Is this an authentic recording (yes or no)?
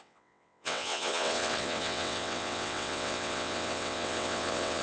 no